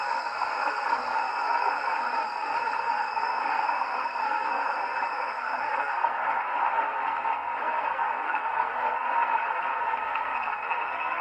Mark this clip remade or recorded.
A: remade